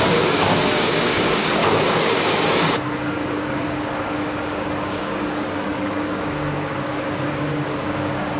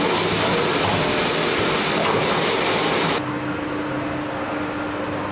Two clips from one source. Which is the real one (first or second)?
second